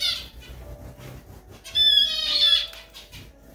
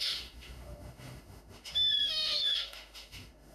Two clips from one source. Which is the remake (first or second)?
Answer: second